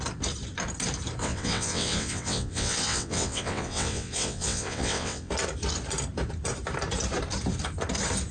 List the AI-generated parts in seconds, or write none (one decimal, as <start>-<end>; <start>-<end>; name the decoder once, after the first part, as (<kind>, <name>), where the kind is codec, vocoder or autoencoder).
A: 1.2-5.3 (vocoder, WaveNeXt)